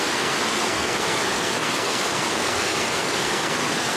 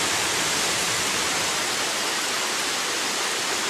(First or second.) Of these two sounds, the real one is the second